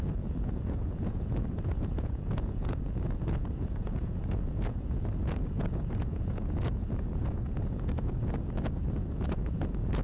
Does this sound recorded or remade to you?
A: remade